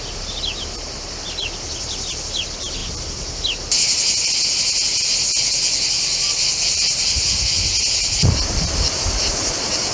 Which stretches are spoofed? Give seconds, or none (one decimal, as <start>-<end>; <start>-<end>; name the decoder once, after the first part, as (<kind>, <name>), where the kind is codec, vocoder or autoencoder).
none